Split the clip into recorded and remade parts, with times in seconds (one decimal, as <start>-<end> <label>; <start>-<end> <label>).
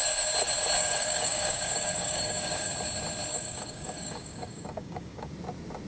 0.0-0.8 recorded; 0.8-2.7 remade; 2.7-3.3 recorded; 3.3-5.3 remade; 5.3-5.9 recorded